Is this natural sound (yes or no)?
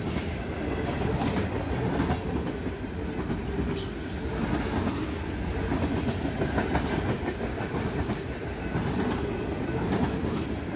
yes